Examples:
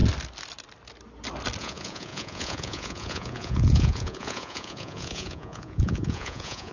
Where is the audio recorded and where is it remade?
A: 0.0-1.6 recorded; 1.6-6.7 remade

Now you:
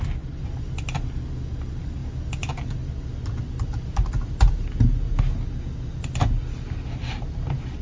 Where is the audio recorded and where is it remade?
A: 0.0-7.8 recorded

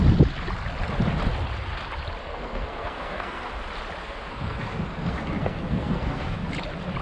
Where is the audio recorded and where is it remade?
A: 0.0-2.2 recorded; 2.2-3.5 remade; 3.5-4.0 recorded; 4.0-6.5 remade; 6.5-7.0 recorded

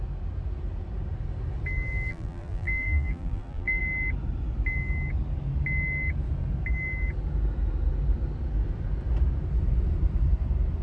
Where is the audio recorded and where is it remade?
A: 0.0-2.1 recorded; 2.1-3.8 remade; 3.8-10.8 recorded

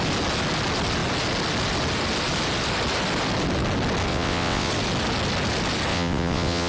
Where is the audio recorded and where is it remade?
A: 0.0-4.1 recorded; 4.1-4.7 remade; 4.7-5.9 recorded; 5.9-6.7 remade

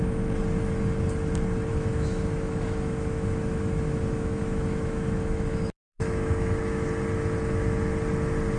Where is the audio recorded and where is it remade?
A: 0.0-1.7 recorded; 1.7-6.9 remade; 6.9-8.6 recorded